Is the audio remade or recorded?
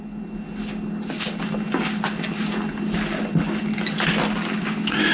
recorded